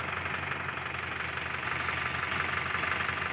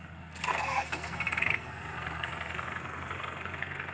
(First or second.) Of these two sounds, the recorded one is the first